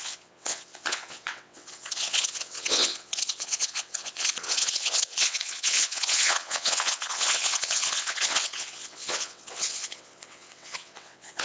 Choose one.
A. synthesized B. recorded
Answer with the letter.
A